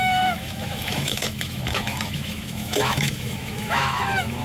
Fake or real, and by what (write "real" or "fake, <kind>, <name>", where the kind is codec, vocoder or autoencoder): fake, autoencoder, DAC-VAE